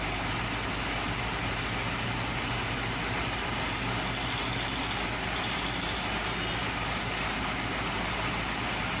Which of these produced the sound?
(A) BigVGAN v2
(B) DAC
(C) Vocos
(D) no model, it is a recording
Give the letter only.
D